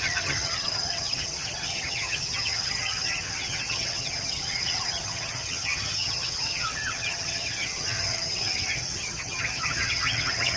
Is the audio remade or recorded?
remade